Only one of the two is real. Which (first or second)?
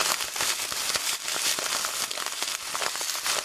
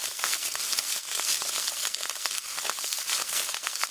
first